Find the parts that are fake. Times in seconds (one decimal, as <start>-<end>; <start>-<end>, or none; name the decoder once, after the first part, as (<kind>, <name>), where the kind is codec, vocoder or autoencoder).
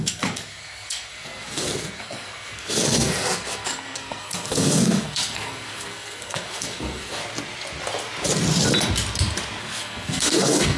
0.0-7.2 (codec, SNAC); 9.6-10.8